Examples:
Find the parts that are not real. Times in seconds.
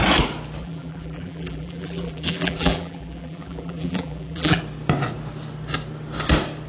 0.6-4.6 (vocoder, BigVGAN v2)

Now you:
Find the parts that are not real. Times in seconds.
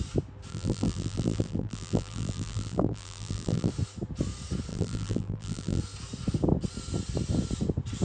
0.5-3.7 (vocoder, BigVGAN v2); 4.7-5.8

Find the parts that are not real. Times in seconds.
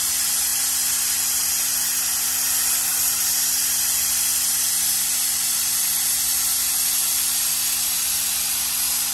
2.9-6.7 (vocoder, BigVGAN v2)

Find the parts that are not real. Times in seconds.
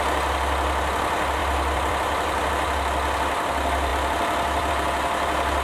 1.4-2.5 (vocoder, BigVGAN v2); 3.9-4.7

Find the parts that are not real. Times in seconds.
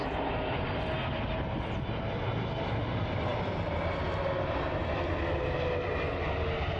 none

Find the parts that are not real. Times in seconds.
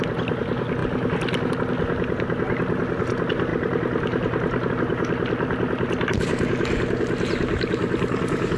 none